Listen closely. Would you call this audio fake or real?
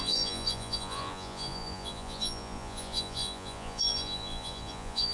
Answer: fake